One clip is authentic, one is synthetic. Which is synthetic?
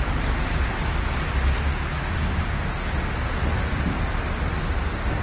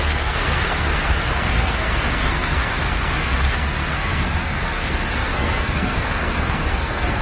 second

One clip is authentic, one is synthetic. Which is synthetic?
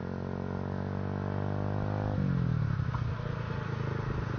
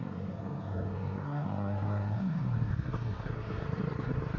second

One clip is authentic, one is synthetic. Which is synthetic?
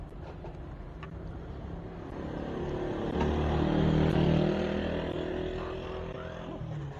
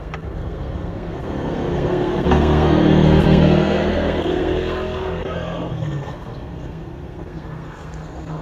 second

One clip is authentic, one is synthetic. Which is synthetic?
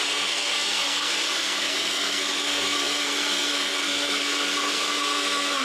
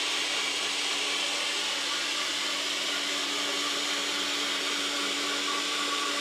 first